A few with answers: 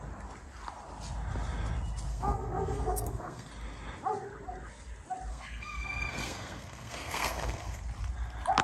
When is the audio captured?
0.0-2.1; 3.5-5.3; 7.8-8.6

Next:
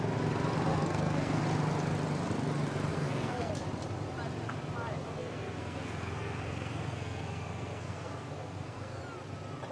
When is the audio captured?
0.0-0.7; 1.4-2.9; 3.5-5.2; 9.0-9.7

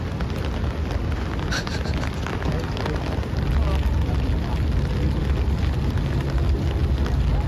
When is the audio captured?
0.0-7.5

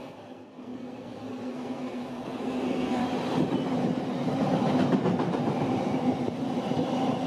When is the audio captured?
3.0-7.3

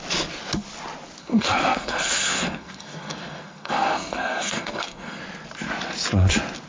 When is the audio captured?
0.0-1.2; 5.2-6.7

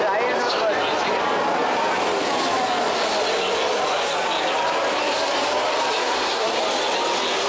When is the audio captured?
0.0-6.0; 6.6-7.5